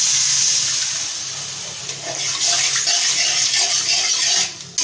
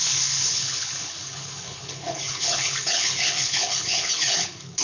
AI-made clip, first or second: second